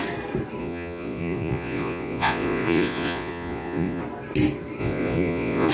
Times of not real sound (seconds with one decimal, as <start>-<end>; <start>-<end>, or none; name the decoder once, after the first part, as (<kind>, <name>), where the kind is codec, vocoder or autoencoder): 0.6-4.0 (vocoder, Vocos); 4.8-5.7